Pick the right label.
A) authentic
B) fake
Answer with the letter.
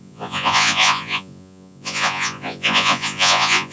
B